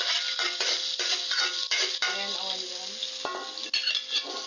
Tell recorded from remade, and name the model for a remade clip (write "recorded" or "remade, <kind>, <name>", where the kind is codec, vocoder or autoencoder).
recorded